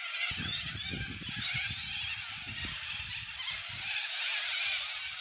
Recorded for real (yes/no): yes